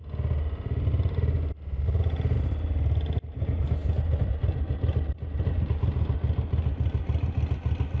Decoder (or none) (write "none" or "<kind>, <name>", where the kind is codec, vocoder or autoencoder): none